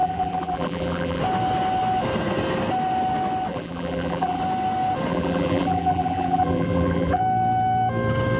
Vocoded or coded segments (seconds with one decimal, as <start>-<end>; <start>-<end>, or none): 0.0-1.2; 3.5-4.4; 5.1-7.2